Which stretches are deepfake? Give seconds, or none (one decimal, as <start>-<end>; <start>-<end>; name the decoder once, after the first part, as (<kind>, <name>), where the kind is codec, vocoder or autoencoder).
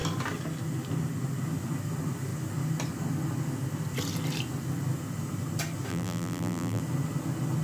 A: 5.9-6.8 (vocoder, BigVGAN v2)